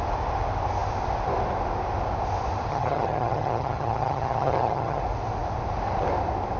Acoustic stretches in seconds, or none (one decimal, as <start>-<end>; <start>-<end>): 0.0-2.7; 5.0-6.6